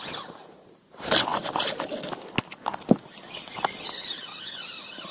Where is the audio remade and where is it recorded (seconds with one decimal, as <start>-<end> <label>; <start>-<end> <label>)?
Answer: 0.0-5.1 recorded